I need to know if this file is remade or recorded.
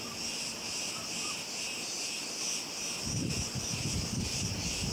recorded